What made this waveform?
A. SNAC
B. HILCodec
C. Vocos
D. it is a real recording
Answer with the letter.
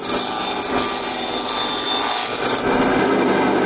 D